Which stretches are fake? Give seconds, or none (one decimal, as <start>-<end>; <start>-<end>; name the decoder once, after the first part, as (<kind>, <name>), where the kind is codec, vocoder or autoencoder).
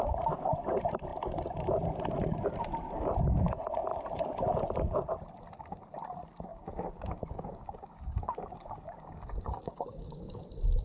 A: 6.5-10.4 (codec, DAC)